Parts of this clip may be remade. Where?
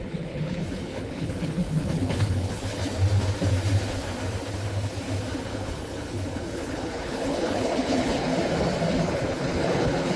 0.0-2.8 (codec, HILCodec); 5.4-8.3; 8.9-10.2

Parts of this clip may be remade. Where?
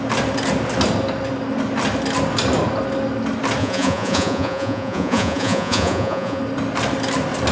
3.6-6.4 (vocoder, Vocos)